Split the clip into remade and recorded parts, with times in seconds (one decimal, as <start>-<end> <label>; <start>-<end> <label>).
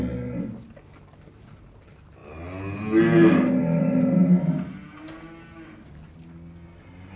0.0-7.2 recorded